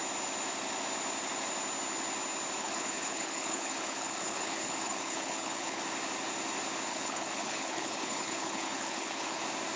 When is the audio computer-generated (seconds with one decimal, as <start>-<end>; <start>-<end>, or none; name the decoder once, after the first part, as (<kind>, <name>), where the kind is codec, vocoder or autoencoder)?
2.6-5.8 (codec, HILCodec); 6.9-9.4